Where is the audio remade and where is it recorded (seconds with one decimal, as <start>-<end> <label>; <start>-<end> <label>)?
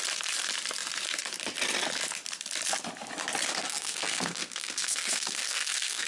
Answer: 0.0-3.5 recorded; 3.5-6.1 remade